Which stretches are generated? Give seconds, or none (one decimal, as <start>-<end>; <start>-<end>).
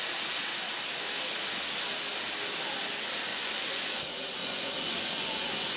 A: 3.3-4.0; 4.4-5.8